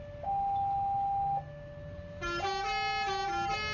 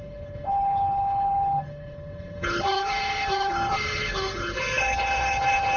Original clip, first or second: first